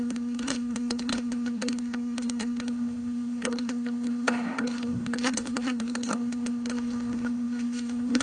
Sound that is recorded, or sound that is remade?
remade